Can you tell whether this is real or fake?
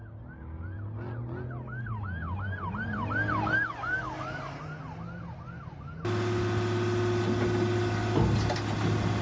real